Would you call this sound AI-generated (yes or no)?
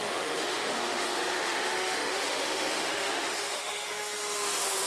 yes